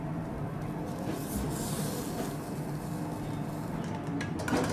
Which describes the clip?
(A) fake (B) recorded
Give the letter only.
B